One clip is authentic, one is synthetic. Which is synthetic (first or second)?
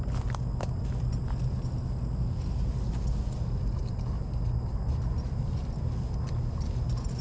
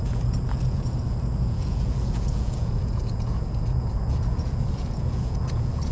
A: second